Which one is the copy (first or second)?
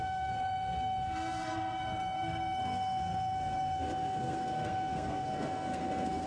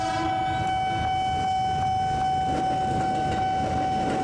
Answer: first